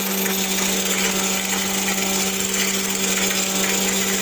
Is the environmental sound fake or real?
real